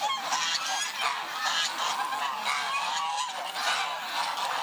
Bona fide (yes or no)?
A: yes